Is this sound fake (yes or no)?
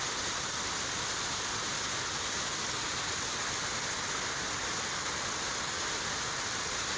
no